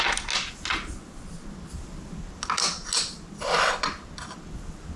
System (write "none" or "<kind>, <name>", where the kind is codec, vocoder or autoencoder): none